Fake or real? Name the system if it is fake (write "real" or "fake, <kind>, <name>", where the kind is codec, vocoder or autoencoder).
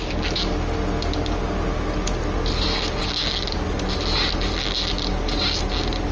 real